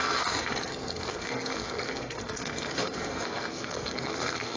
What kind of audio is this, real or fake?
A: fake